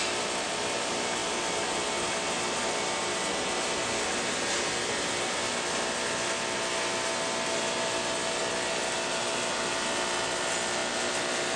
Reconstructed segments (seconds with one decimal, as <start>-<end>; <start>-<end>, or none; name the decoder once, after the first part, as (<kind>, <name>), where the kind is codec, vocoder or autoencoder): none